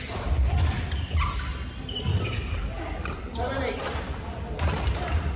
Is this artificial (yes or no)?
no